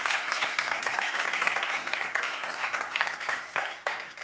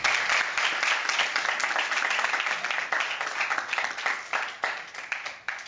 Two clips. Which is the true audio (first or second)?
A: second